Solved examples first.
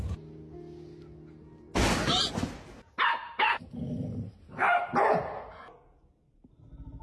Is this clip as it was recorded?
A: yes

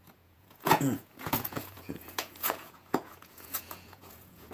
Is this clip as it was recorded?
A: no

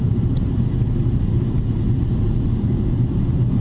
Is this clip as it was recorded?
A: yes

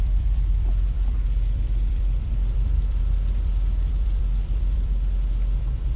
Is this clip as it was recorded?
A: no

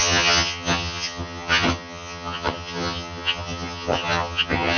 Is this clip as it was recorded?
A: no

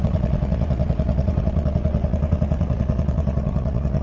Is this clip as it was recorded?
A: no